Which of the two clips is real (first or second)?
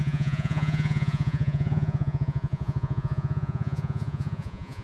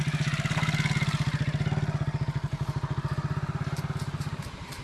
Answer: second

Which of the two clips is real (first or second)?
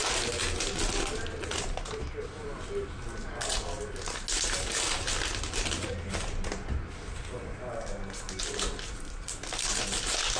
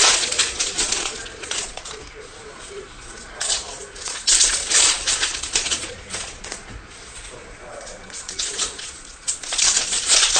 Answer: first